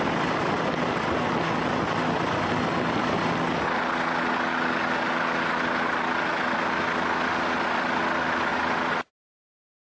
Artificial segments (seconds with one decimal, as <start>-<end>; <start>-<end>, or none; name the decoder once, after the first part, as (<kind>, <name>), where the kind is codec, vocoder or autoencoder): none